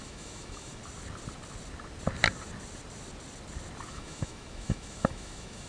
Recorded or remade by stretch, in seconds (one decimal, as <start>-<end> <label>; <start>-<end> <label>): 0.0-0.8 remade; 0.8-3.9 recorded; 3.9-5.7 remade